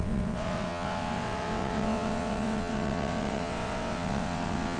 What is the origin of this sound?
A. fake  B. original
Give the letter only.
A